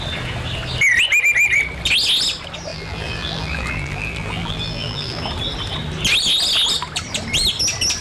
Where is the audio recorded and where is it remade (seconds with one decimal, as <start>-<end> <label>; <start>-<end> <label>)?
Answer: 0.0-2.7 recorded; 2.7-5.2 remade; 5.2-8.0 recorded